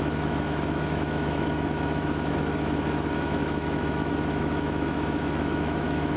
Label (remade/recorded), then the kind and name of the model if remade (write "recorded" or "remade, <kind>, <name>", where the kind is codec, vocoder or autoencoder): remade, autoencoder, DAC-VAE